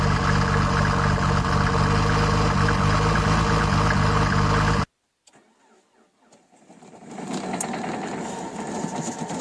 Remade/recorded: recorded